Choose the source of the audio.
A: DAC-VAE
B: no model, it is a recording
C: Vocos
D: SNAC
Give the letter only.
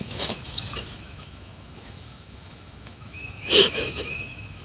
A